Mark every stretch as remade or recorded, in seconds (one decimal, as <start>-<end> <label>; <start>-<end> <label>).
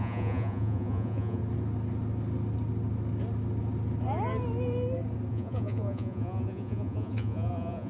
0.0-1.4 remade; 1.4-5.3 recorded; 5.3-7.9 remade